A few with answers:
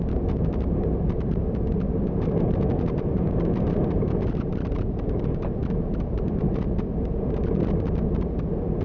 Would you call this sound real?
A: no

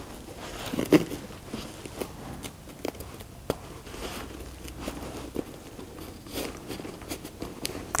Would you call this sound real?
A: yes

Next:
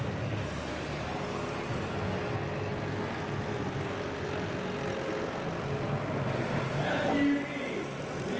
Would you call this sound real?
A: yes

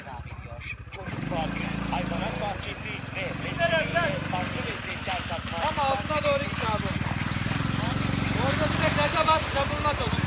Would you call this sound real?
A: yes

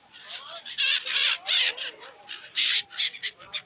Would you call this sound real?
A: no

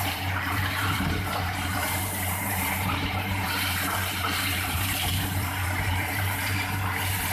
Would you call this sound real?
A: no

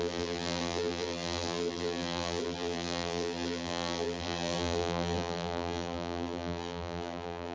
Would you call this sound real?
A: no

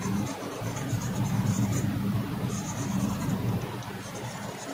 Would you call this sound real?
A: no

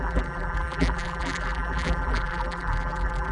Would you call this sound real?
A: no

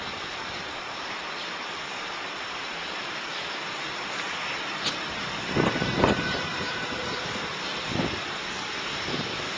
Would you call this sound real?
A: no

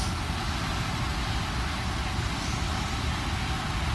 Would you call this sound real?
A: no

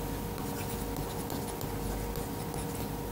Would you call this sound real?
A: yes